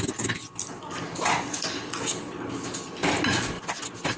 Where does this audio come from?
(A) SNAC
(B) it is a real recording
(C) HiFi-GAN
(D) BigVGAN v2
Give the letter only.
B